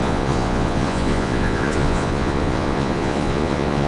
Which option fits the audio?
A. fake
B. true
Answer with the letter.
A